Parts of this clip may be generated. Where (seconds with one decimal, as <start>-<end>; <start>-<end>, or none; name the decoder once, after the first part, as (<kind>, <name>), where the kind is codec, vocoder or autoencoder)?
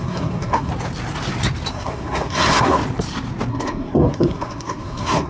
0.0-0.7 (codec, SNAC); 1.7-2.8; 3.5-5.3